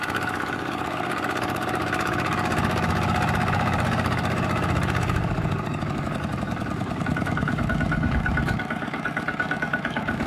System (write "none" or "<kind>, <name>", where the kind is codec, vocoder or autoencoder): codec, DAC